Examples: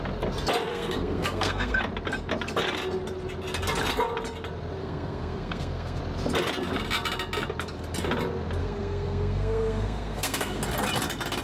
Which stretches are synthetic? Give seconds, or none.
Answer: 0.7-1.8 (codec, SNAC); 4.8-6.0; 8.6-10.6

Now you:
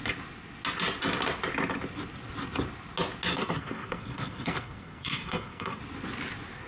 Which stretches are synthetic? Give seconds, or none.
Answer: 3.3-5.8 (codec, SNAC)

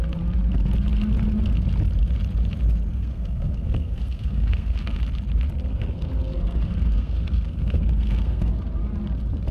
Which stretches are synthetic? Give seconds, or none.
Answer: 2.9-5.0 (codec, SNAC); 5.7-8.5

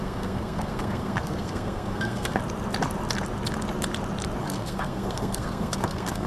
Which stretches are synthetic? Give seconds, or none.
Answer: 0.0-2.4 (codec, SNAC); 4.4-6.3

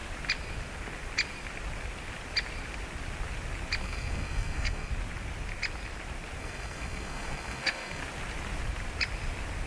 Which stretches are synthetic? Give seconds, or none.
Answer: 3.8-4.9 (codec, SNAC); 6.4-8.0

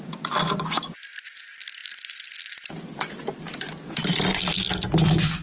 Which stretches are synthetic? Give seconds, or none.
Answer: none

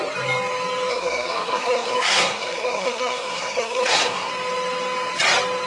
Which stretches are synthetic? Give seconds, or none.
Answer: 0.9-4.3 (codec, SNAC)